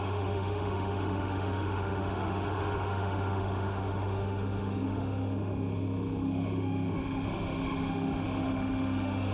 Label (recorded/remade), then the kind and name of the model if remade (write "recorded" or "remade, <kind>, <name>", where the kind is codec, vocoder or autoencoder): remade, autoencoder, DAC-VAE